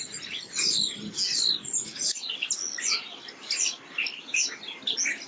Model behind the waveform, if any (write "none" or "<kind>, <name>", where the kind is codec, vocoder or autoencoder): none